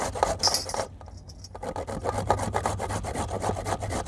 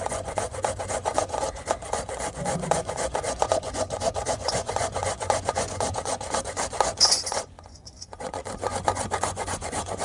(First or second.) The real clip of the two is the first